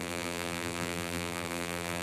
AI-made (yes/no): yes